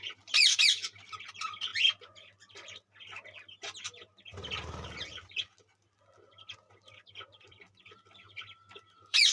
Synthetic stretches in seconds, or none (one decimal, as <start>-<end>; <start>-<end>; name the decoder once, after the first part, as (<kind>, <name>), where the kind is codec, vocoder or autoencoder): 0.0-1.7 (vocoder, BigVGAN v2); 6.3-9.3